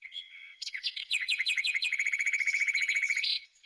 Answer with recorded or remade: remade